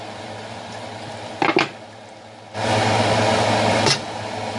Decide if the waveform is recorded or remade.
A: recorded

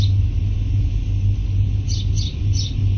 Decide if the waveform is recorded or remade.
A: recorded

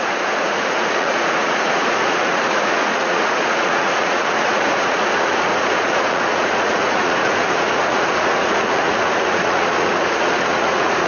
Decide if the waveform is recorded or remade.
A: remade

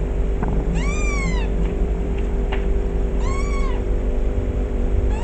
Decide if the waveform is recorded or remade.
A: remade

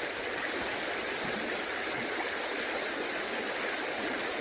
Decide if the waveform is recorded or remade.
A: recorded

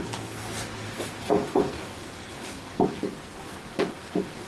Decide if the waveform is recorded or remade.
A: remade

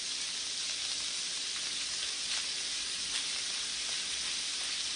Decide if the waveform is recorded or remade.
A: recorded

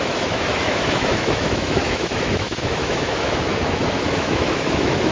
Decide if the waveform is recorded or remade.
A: remade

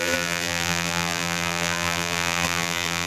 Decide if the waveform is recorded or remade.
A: remade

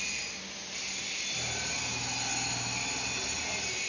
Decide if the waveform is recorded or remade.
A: recorded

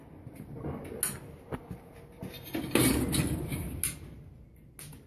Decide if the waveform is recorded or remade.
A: recorded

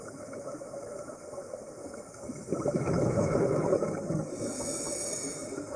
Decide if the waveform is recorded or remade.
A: remade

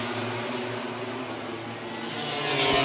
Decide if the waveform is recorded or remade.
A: recorded